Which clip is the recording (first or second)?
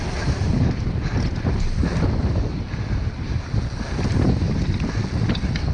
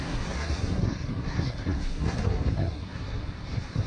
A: first